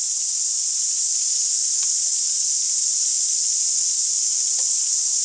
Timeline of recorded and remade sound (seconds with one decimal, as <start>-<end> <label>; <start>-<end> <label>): 0.0-5.2 recorded